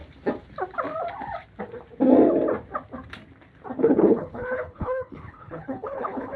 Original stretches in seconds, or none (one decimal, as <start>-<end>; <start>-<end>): 0.0-3.8